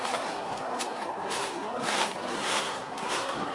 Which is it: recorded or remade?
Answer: remade